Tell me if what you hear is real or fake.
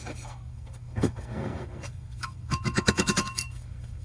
fake